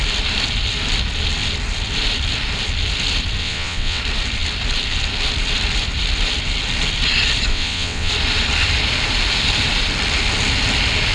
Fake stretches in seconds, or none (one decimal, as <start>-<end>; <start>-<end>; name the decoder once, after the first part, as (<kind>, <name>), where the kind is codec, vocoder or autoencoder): 3.4-4.0 (vocoder, WaveNeXt); 7.5-8.1